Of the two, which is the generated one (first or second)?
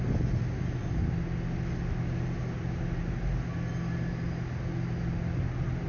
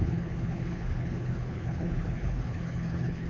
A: second